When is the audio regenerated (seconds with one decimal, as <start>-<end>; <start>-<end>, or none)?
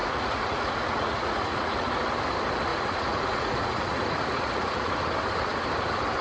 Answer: 0.0-2.0; 2.7-5.1